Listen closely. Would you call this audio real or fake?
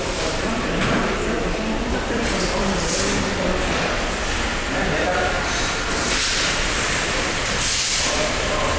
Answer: fake